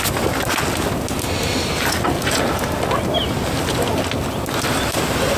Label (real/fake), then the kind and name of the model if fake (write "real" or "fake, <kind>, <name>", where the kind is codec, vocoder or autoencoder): real